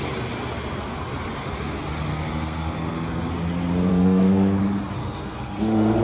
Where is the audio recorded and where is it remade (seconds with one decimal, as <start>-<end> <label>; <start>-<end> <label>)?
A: 0.0-2.1 recorded; 2.1-3.3 remade; 3.3-3.9 recorded; 3.9-4.6 remade; 4.6-5.0 recorded; 5.0-6.0 remade